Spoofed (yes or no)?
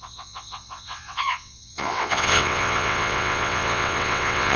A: yes